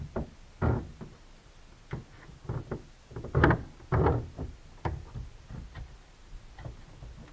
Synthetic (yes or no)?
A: no